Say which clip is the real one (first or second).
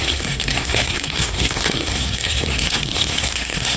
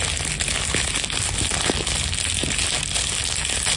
second